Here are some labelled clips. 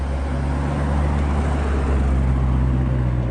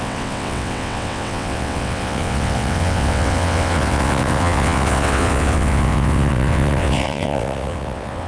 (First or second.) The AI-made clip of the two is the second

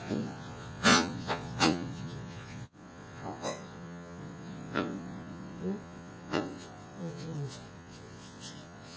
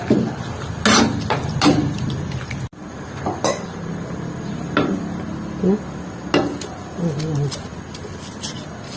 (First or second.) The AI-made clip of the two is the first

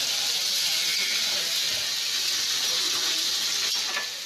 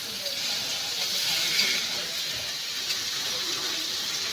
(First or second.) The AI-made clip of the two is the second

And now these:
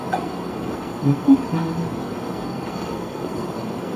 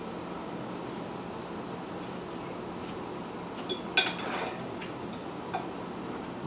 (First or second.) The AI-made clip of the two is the first